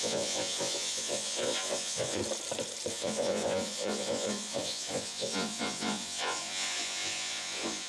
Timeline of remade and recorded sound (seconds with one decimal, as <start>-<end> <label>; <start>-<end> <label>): 0.0-2.2 remade; 2.2-2.9 recorded; 2.9-7.9 remade

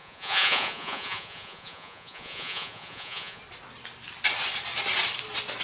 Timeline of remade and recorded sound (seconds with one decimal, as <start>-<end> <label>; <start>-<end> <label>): 0.0-3.4 remade; 3.4-5.6 recorded

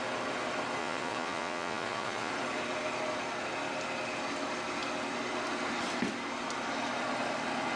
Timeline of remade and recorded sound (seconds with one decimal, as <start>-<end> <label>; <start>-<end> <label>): 0.0-0.8 recorded; 0.8-2.3 remade; 2.3-7.8 recorded

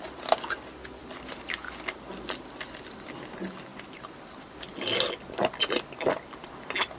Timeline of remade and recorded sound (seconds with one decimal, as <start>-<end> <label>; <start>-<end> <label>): 0.0-7.0 recorded